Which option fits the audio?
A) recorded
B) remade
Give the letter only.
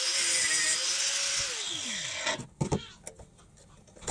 A